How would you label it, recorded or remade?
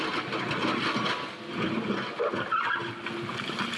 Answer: recorded